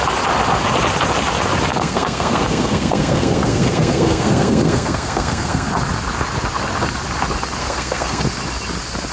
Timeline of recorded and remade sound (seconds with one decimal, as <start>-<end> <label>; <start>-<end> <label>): 0.0-1.7 recorded; 1.7-5.7 remade; 5.7-7.6 recorded; 7.6-8.2 remade; 8.2-9.1 recorded